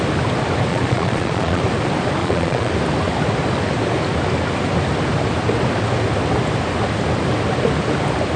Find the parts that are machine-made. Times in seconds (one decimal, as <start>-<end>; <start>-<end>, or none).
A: 0.7-1.6; 2.2-2.7